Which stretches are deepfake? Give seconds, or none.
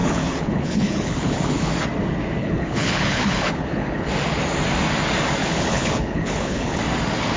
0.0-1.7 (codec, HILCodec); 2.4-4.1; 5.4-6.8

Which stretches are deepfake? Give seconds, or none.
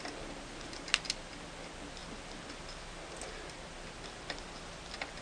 none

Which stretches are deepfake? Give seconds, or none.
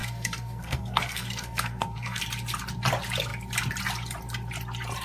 0.0-2.2 (codec, SNAC)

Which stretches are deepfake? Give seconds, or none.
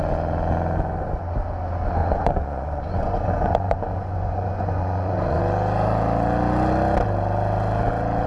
2.0-5.4 (vocoder, Vocos)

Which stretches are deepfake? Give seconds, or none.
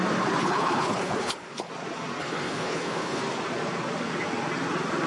0.4-1.7 (codec, HILCodec); 2.2-3.2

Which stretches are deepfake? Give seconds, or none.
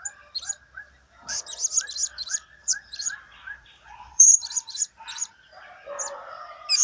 2.6-5.3 (vocoder, BigVGAN v2)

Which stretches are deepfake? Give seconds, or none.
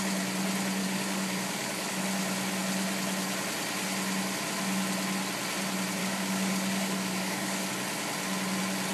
0.8-2.0 (codec, DAC); 6.0-7.7